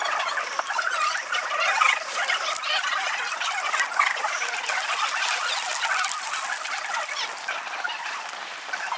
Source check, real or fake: real